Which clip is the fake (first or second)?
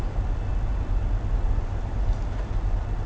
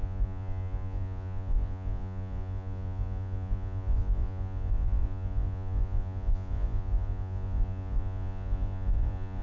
second